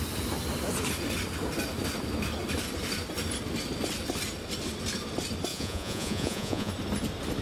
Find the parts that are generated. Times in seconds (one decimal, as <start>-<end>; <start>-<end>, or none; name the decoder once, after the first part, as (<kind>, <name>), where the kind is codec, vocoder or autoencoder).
5.5-6.7 (vocoder, Vocos)